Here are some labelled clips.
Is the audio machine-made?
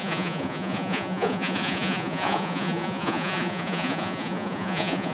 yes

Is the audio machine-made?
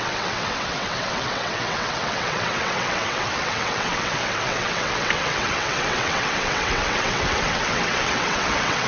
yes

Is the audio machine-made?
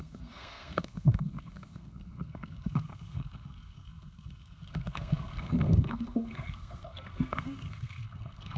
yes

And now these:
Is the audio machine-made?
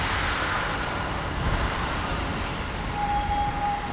no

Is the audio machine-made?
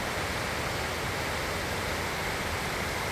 no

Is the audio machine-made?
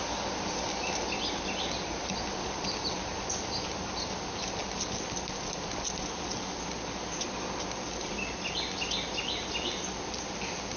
no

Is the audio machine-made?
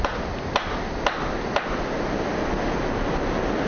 no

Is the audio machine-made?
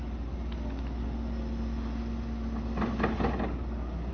no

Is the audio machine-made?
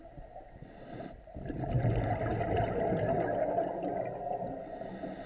no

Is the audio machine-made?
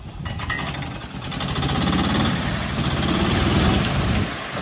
no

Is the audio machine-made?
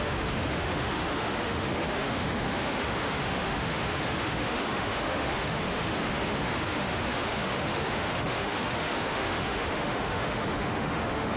yes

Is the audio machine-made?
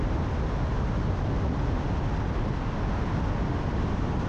no